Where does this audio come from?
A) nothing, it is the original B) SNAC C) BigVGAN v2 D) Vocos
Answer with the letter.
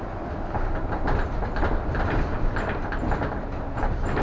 A